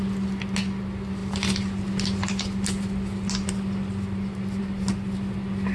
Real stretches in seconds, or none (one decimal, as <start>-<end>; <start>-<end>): 0.0-5.7